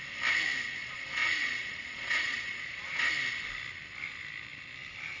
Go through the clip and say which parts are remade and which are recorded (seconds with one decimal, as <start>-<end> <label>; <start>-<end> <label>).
0.0-0.8 recorded; 0.8-3.1 remade; 3.1-5.2 recorded